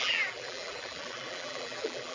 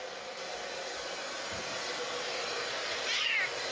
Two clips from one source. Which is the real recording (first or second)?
second